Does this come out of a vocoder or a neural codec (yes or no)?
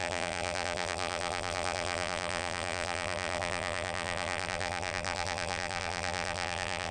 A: yes